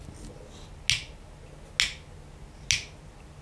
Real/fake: real